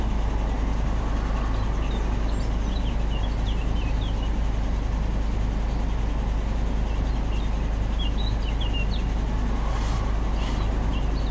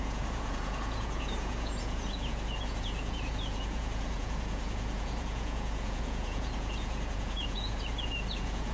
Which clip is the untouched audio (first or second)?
first